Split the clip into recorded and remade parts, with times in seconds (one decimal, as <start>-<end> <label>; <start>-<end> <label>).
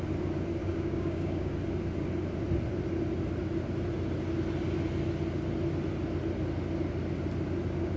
0.0-0.6 recorded; 0.6-1.5 remade; 1.5-8.0 recorded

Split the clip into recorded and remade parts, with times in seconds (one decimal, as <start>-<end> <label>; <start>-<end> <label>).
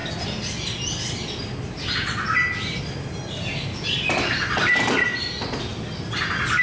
0.0-6.6 recorded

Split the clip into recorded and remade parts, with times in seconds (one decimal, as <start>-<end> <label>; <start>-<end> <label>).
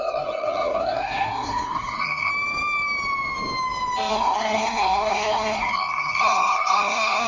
0.0-2.3 remade; 2.3-4.1 recorded; 4.1-7.3 remade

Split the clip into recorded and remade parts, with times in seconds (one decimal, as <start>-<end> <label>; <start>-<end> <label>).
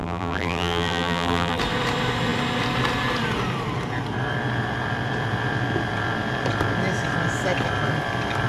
0.0-1.6 remade; 1.6-8.5 recorded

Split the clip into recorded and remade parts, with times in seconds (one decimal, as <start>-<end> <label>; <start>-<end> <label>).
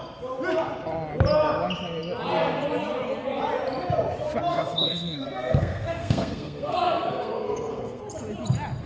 0.0-4.5 recorded; 4.5-8.0 remade; 8.0-8.9 recorded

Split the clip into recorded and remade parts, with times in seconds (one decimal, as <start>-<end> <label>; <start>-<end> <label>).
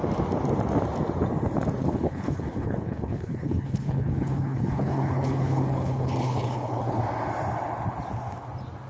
0.0-1.8 recorded; 1.8-7.0 remade; 7.0-8.9 recorded